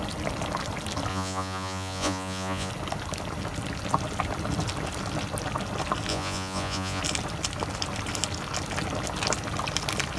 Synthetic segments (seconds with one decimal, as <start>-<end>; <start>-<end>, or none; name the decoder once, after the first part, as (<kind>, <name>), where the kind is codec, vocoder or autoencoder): 1.1-2.7 (vocoder, Vocos); 6.1-7.0